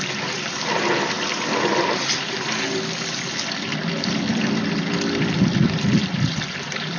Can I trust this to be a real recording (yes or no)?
yes